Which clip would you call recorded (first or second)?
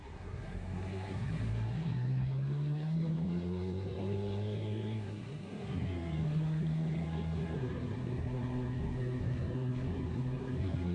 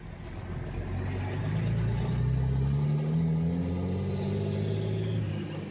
second